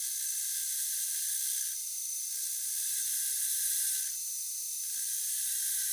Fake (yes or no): yes